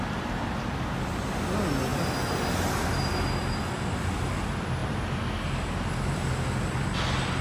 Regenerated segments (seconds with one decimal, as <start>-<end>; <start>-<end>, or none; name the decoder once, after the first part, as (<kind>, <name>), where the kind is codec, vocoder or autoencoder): none